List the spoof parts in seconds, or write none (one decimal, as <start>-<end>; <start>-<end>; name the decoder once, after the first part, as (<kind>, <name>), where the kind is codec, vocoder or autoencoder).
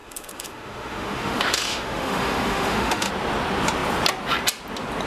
0.0-3.1 (autoencoder, DAC-VAE)